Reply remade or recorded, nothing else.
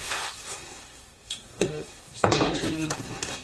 remade